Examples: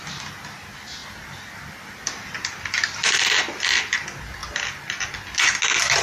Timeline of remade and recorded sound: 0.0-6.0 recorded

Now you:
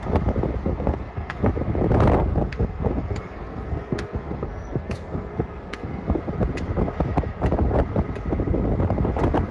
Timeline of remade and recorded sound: 0.0-0.6 recorded; 0.6-1.5 remade; 1.5-2.3 recorded; 2.3-6.2 remade; 6.2-9.5 recorded

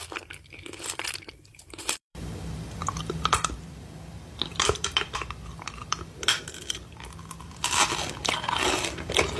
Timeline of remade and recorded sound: 0.0-1.5 recorded; 1.5-2.3 remade; 2.3-9.4 recorded

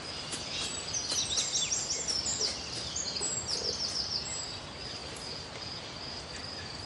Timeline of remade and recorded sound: 0.0-5.0 recorded; 5.0-5.8 remade; 5.8-6.9 recorded

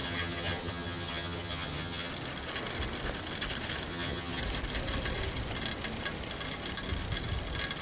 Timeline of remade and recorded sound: 0.0-2.1 remade; 2.1-3.9 recorded; 3.9-4.4 remade; 4.4-7.8 recorded

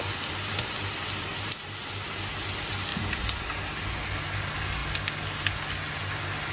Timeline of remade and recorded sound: 0.0-1.3 recorded; 1.3-2.2 remade; 2.2-2.9 recorded; 2.9-3.5 remade; 3.5-6.5 recorded

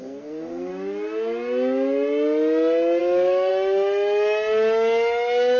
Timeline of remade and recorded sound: 0.0-0.7 remade; 0.7-3.0 recorded; 3.0-3.5 remade; 3.5-5.6 recorded

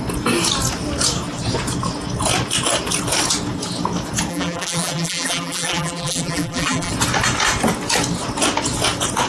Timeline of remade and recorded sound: 0.0-4.3 recorded; 4.3-6.9 remade; 6.9-9.3 recorded